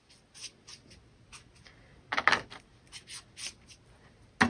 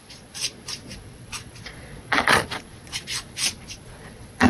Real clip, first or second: first